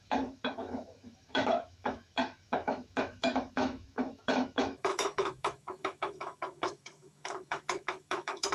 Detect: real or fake fake